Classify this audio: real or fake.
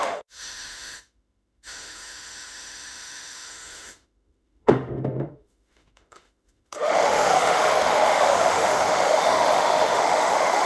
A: fake